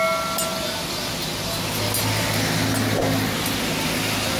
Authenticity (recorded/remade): recorded